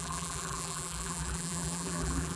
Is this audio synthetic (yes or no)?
yes